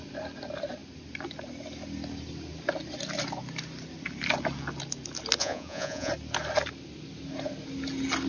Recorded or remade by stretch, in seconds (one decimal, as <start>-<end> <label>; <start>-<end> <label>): 0.0-5.4 recorded; 5.4-6.1 remade; 6.1-8.3 recorded